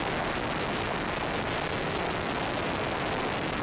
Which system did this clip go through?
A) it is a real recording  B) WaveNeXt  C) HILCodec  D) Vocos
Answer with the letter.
A